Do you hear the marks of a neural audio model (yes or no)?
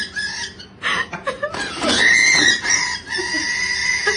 no